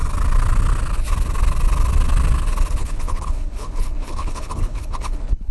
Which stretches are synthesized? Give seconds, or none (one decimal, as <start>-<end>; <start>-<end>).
2.8-5.5